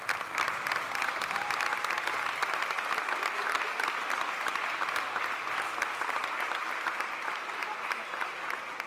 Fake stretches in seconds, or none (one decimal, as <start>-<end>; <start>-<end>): none